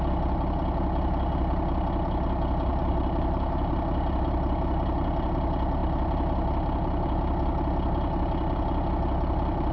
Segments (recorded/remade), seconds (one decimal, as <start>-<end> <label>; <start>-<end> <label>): 0.0-2.7 recorded; 2.7-3.7 remade; 3.7-9.7 recorded